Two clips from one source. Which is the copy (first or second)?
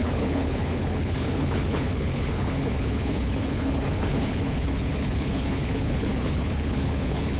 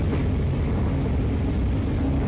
first